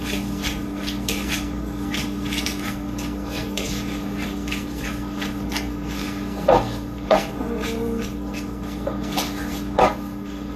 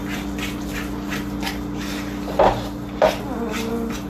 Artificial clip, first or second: first